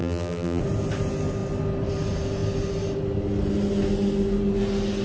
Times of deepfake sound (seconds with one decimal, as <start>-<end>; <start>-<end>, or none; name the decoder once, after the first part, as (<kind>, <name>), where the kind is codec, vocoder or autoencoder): 0.0-0.6 (vocoder, BigVGAN v2)